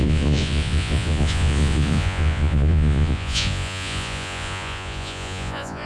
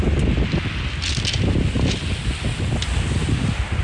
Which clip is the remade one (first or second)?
first